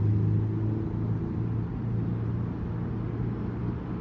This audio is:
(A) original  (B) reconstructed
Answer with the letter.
A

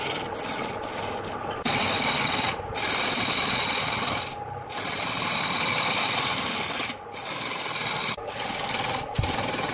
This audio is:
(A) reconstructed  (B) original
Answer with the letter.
B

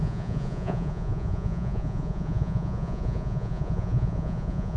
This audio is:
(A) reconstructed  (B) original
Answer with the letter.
A